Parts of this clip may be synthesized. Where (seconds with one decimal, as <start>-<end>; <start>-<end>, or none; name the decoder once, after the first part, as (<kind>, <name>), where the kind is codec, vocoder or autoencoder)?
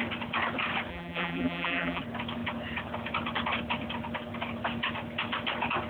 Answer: 0.9-2.0 (vocoder, BigVGAN v2)